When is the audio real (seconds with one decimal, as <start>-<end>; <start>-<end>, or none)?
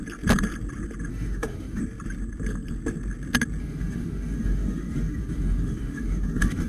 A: 0.0-1.1; 1.8-3.6